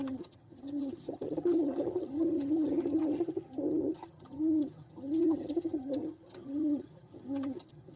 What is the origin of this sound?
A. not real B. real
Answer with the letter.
A